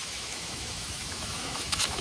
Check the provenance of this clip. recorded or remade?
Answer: remade